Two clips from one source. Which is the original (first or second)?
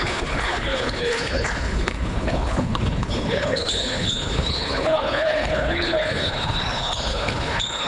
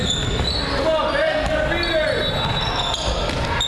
second